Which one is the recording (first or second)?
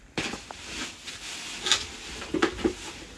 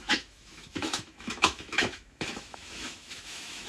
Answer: first